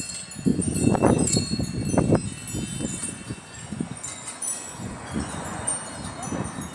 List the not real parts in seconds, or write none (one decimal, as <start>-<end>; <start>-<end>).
0.5-1.4; 3.0-5.7